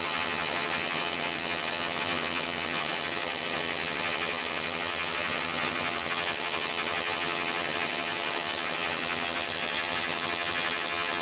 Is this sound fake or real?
fake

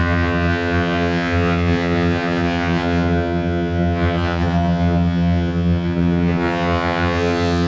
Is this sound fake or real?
fake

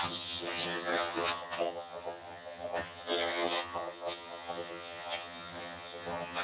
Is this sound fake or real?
fake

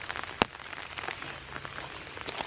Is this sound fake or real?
real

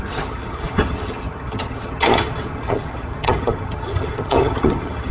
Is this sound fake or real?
fake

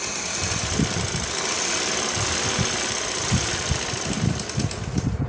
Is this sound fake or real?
real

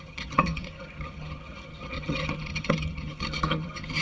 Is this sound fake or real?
fake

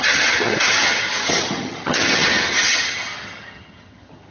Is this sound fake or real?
fake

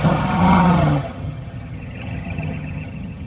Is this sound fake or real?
fake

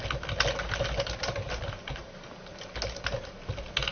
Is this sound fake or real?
real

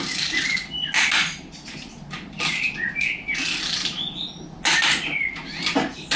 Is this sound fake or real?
real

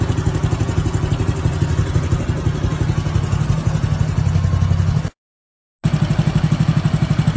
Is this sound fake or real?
real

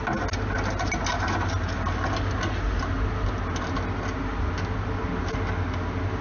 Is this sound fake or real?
real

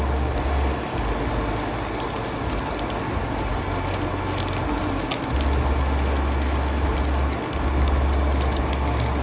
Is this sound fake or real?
real